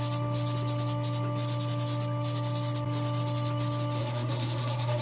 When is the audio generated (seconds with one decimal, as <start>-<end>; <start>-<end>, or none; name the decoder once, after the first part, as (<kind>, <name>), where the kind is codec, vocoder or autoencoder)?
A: 4.0-5.0 (codec, SNAC)